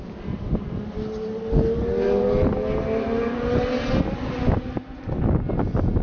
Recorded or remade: recorded